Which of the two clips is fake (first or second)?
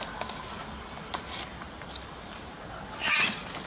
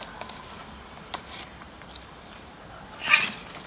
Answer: second